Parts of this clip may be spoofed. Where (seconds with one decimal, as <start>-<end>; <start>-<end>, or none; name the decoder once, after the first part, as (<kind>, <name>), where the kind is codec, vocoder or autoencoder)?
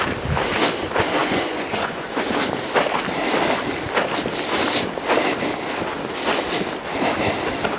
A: 1.2-2.3 (vocoder, Vocos)